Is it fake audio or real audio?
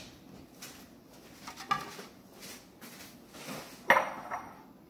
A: real